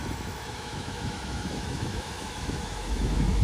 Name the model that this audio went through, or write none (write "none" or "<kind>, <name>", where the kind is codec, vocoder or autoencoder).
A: autoencoder, DAC-VAE